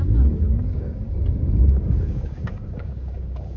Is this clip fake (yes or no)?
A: yes